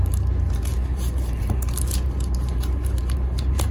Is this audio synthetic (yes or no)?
yes